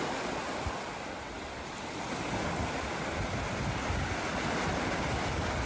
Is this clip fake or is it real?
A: real